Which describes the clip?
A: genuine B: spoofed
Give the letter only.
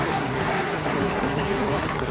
B